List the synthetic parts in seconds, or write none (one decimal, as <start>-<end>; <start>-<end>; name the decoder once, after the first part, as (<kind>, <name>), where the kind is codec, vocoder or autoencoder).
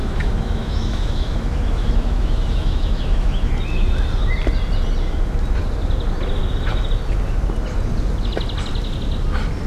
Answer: 0.0-3.5 (autoencoder, DAC-VAE)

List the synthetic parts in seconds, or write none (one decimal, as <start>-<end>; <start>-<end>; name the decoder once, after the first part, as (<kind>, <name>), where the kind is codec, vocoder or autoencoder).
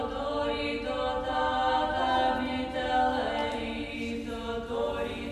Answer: none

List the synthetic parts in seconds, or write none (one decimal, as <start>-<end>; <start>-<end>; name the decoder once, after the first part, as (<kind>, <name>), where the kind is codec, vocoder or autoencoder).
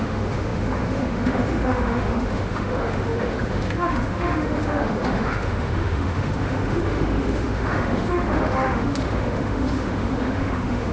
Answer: 0.0-10.9 (autoencoder, DAC-VAE)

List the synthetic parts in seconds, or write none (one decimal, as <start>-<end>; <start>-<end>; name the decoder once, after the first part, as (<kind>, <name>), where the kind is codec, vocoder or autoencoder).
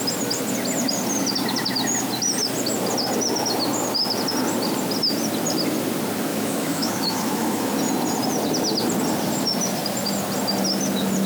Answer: 6.3-7.7 (autoencoder, DAC-VAE)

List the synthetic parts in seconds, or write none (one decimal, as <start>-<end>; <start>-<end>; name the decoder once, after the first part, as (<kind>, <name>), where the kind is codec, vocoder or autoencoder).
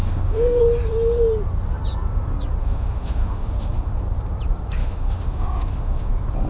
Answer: 0.0-0.6 (autoencoder, DAC-VAE); 2.6-3.9; 4.8-6.1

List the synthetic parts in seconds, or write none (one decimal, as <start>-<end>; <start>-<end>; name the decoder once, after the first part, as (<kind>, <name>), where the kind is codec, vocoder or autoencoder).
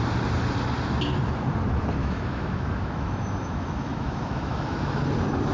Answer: 2.0-4.9 (autoencoder, DAC-VAE)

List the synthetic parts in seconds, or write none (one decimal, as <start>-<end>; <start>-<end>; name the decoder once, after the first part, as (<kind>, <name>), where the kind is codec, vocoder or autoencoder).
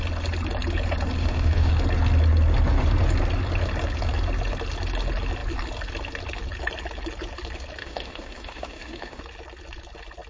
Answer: 1.2-1.7 (autoencoder, DAC-VAE); 7.8-9.2